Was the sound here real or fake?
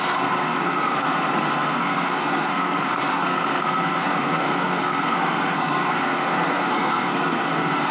fake